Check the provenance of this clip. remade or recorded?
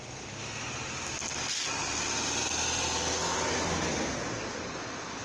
recorded